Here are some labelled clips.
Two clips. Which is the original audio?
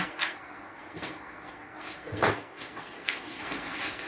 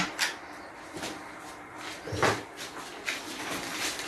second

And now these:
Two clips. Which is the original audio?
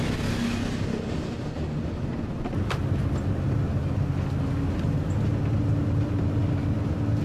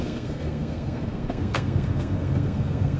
first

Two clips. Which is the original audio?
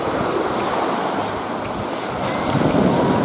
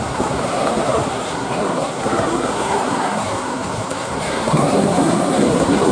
first